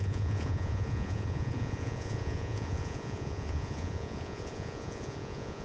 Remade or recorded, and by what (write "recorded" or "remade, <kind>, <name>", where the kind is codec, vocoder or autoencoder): remade, vocoder, Vocos